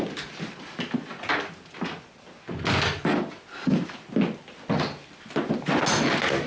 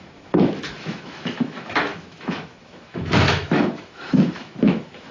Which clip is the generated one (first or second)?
second